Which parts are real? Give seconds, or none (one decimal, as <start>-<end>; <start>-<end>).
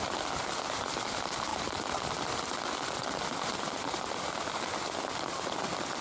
0.0-6.0